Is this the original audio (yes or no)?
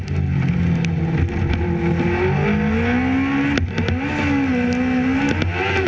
yes